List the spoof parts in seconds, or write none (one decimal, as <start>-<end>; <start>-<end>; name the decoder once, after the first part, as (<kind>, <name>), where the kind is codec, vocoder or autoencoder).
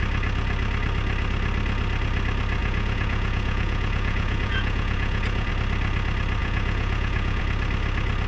2.6-5.5 (vocoder, Vocos); 6.4-7.4